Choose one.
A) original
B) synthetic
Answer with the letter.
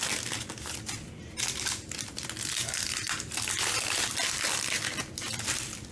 B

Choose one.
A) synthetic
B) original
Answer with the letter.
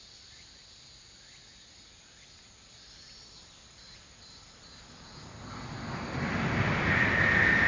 B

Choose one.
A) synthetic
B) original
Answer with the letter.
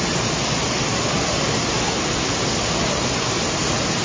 B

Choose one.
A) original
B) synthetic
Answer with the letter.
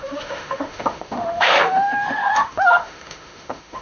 B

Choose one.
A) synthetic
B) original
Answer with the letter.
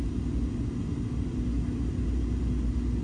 B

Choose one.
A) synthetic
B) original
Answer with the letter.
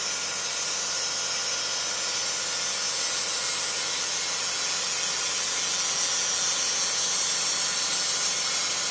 B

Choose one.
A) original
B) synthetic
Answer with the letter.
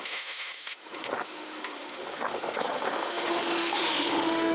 B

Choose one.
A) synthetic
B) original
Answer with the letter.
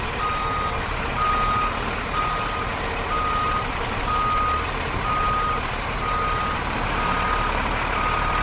B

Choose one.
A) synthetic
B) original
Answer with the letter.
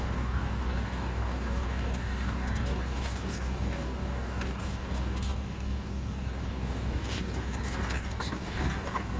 A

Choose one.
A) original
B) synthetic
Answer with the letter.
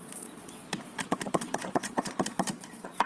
B